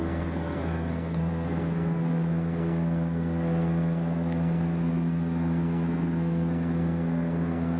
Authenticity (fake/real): fake